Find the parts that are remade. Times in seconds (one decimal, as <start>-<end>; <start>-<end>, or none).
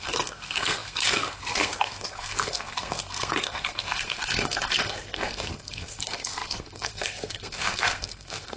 0.0-8.6